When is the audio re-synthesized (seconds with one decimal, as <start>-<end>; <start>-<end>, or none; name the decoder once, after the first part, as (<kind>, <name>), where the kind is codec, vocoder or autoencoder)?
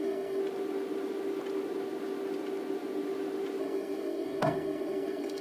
0.0-0.4 (codec, SNAC); 3.6-5.4